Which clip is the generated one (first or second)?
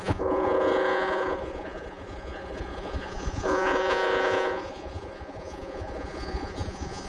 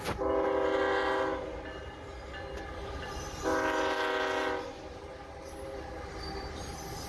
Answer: first